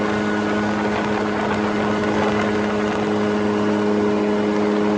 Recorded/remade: recorded